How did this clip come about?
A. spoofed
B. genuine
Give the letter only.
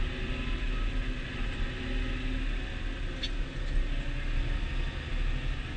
B